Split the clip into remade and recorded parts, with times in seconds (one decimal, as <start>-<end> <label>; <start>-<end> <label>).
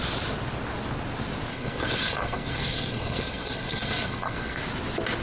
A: 0.0-1.5 recorded; 1.5-4.6 remade; 4.6-5.2 recorded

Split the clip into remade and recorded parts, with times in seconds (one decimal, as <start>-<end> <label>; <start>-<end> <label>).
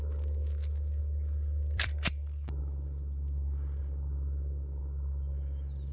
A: 0.0-1.0 recorded; 1.0-2.6 remade; 2.6-3.8 recorded; 3.8-4.8 remade; 4.8-5.9 recorded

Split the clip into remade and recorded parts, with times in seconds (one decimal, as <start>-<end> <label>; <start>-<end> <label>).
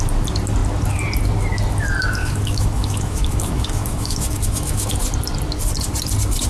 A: 0.0-2.2 recorded; 2.2-4.9 remade; 4.9-6.5 recorded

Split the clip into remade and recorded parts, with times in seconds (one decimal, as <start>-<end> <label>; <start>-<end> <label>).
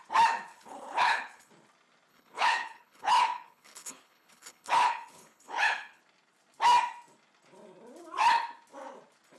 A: 0.0-0.5 recorded; 0.5-1.5 remade; 1.5-2.1 recorded; 2.1-6.0 remade; 6.0-9.4 recorded